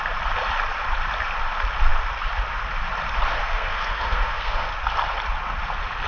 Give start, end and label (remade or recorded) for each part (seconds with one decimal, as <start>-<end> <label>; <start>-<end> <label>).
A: 0.0-3.4 recorded; 3.4-4.7 remade; 4.7-6.1 recorded